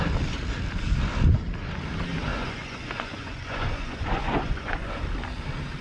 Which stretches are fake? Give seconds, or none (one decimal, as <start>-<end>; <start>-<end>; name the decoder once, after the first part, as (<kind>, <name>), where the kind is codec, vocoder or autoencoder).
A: 2.3-4.9 (vocoder, Vocos)